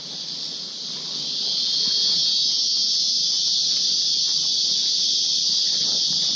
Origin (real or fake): real